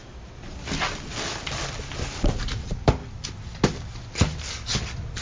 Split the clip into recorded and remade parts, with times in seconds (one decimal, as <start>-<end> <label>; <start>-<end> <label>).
0.0-5.2 recorded